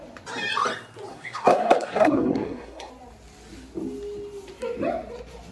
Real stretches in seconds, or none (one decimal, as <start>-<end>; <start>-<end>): 0.0-1.1; 2.9-5.5